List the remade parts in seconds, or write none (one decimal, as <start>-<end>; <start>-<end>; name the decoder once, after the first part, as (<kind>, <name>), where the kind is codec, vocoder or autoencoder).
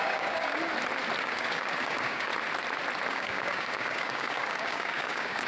0.0-0.6 (codec, DAC); 1.2-2.3; 3.1-5.5